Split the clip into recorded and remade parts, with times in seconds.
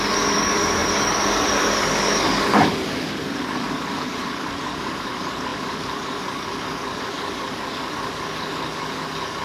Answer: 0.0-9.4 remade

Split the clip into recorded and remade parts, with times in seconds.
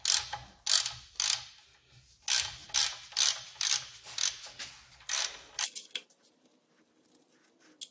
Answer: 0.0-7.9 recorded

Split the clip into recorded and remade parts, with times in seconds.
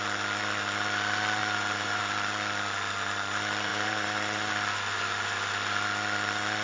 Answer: 0.0-1.4 recorded; 1.4-2.0 remade; 2.0-3.7 recorded; 3.7-4.5 remade; 4.5-6.6 recorded